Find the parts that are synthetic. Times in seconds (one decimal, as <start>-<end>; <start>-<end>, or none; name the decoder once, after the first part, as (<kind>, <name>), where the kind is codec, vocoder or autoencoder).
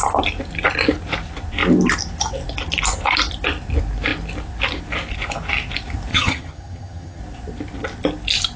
6.1-7.2 (vocoder, HiFi-GAN)